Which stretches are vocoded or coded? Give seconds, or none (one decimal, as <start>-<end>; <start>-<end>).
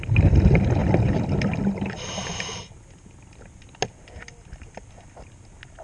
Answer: none